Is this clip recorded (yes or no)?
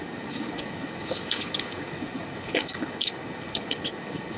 no